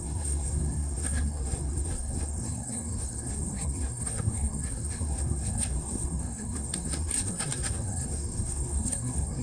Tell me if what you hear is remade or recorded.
remade